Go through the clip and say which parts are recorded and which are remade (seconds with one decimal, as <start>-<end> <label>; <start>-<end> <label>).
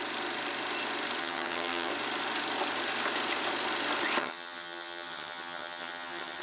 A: 0.0-1.2 recorded; 1.2-1.9 remade; 1.9-4.2 recorded; 4.2-6.4 remade